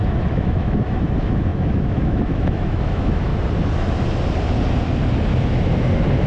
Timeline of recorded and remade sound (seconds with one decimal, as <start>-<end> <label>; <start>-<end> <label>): 0.0-3.3 remade; 3.3-6.3 recorded